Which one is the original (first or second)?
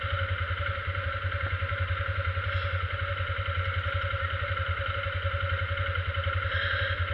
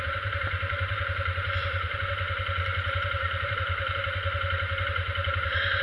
first